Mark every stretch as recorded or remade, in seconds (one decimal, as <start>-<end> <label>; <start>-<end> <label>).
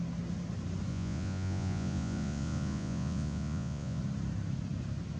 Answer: 0.0-0.9 recorded; 0.9-4.0 remade; 4.0-5.2 recorded